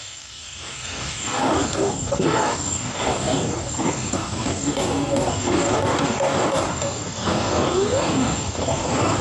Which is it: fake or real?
fake